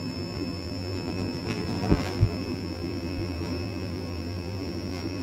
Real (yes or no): no